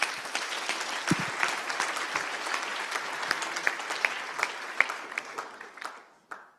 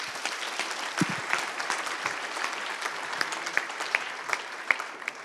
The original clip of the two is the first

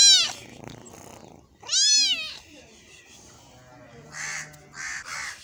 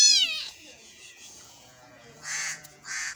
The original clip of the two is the first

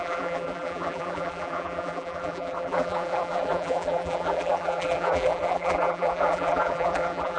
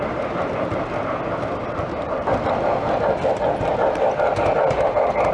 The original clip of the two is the second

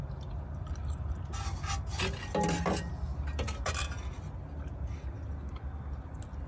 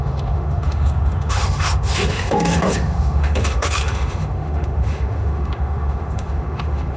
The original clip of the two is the first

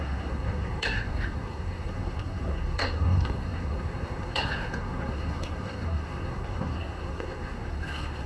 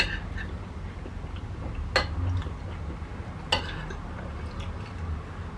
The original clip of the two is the second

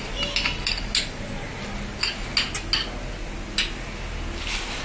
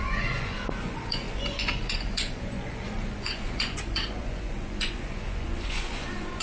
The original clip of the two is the first